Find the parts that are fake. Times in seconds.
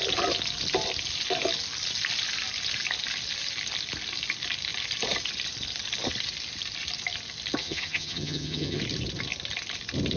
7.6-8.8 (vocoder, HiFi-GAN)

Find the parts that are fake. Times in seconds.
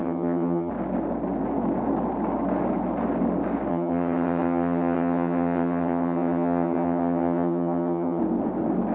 0.0-0.7 (vocoder, HiFi-GAN); 3.7-8.2